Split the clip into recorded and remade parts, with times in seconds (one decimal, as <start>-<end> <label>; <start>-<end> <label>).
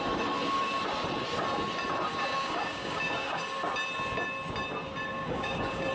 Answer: 0.0-2.1 recorded; 2.1-3.4 remade; 3.4-5.2 recorded; 5.2-5.9 remade